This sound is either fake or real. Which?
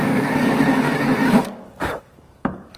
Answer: fake